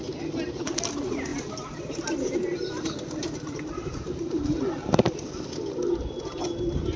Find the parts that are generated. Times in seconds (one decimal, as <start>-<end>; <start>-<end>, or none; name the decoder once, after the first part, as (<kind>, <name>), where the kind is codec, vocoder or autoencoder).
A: 1.3-5.5 (vocoder, BigVGAN v2)

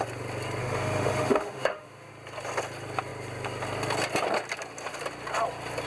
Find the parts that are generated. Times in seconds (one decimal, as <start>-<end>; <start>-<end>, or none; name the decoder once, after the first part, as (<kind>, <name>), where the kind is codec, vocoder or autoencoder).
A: 0.6-2.1 (autoencoder, DAC-VAE)

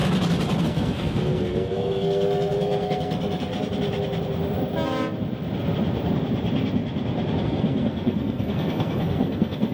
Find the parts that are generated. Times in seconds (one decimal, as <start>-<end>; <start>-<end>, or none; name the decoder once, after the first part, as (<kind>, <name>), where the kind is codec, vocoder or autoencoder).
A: 0.6-3.5 (codec, SNAC); 7.4-9.7

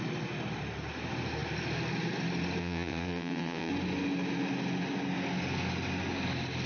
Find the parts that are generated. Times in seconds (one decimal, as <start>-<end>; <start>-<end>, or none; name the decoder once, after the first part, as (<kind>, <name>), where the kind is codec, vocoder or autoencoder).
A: 2.6-3.7 (vocoder, WaveNeXt)

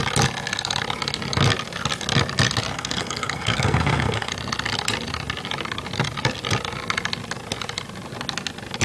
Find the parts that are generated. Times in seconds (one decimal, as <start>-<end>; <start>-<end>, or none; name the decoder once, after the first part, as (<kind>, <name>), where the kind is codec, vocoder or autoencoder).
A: 2.7-4.3 (codec, SNAC)

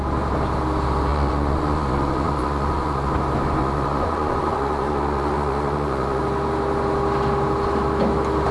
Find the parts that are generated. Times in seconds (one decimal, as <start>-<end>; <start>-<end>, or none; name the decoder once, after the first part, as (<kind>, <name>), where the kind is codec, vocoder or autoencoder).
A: 1.1-3.1 (vocoder, Vocos); 3.6-6.2

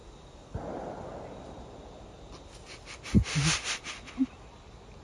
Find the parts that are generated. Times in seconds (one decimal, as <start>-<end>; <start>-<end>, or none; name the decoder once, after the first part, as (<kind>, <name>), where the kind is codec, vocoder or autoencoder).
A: none

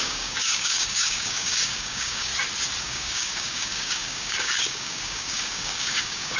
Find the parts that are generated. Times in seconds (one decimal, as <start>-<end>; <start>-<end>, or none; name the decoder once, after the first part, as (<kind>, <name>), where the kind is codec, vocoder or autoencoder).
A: 0.0-2.3 (codec, DAC); 2.8-6.4